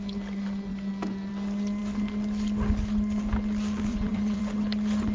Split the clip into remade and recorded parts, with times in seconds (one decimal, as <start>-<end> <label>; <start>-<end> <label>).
0.0-3.9 recorded; 3.9-4.4 remade; 4.4-5.1 recorded